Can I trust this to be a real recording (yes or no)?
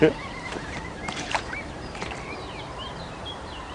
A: no